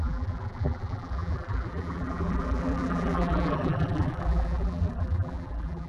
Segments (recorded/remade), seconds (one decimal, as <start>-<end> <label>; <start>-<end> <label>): 0.0-5.9 remade